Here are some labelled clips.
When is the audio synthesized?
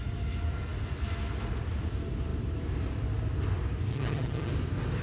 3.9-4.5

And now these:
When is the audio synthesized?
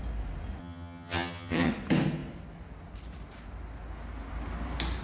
0.6-1.7